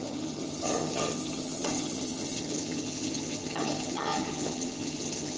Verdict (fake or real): fake